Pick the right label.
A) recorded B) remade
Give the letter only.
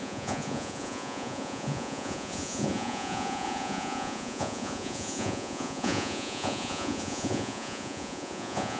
B